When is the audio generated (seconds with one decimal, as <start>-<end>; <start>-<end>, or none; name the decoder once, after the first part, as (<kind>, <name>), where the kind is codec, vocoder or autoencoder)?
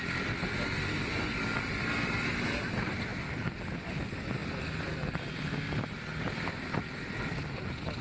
0.0-3.1 (vocoder, BigVGAN v2); 3.9-8.0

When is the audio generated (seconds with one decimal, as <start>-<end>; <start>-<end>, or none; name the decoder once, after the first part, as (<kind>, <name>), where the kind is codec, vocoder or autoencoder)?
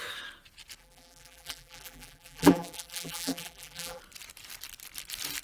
0.8-4.0 (vocoder, BigVGAN v2)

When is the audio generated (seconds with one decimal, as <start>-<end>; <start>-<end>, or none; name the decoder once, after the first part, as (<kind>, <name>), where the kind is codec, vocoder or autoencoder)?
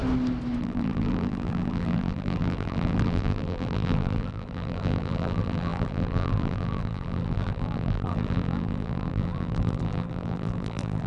0.6-11.1 (vocoder, BigVGAN v2)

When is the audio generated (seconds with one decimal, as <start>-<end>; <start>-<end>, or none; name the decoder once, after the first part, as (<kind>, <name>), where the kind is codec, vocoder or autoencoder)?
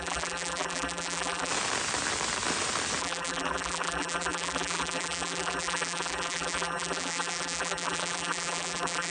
0.0-1.5 (vocoder, BigVGAN v2); 3.0-9.1